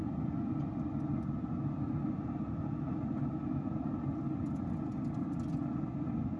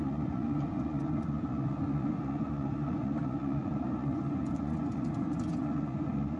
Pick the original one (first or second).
first